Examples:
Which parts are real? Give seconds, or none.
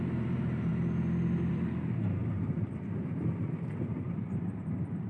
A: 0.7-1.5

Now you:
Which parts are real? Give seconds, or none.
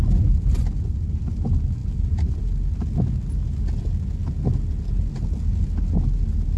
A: 0.0-6.6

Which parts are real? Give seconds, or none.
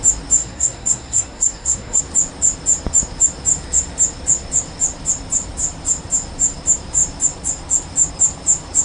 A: 0.0-0.4; 2.0-8.8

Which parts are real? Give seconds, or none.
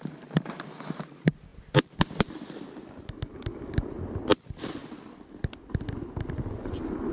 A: 0.0-7.1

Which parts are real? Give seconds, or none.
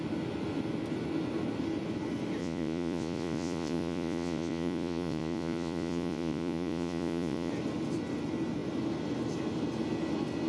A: 0.0-2.4; 7.5-10.5